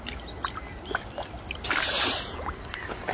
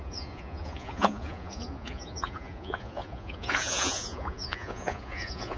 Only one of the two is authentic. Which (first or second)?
first